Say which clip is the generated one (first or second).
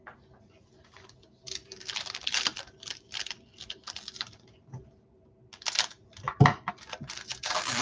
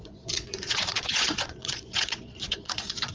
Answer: second